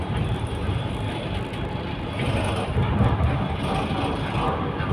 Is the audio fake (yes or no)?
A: no